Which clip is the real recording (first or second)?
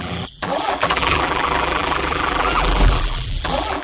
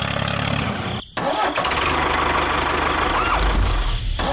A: second